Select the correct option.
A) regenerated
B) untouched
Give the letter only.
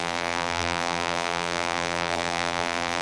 A